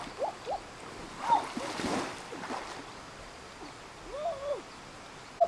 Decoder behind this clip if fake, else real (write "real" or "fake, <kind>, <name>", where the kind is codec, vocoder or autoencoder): real